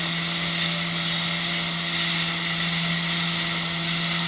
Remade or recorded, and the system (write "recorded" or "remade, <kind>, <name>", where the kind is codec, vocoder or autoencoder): recorded